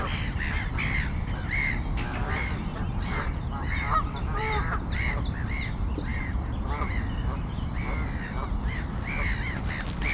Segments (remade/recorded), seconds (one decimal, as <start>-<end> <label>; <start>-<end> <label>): 0.0-2.7 recorded; 2.7-5.1 remade; 5.1-6.1 recorded; 6.1-6.7 remade; 6.7-10.1 recorded